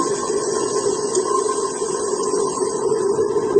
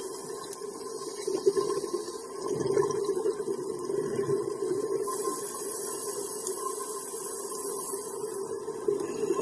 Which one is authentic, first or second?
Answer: second